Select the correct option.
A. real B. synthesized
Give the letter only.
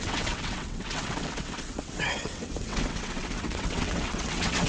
B